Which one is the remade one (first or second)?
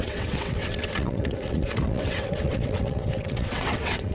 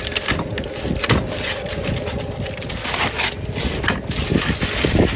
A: first